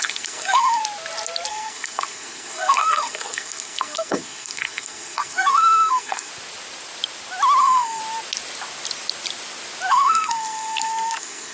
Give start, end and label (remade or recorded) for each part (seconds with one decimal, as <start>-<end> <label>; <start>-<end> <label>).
0.0-0.8 remade; 0.8-1.5 recorded; 1.5-6.3 remade; 6.3-7.6 recorded; 7.6-8.0 remade; 8.0-9.9 recorded; 9.9-11.5 remade